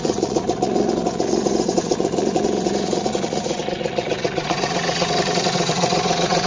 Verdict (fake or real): fake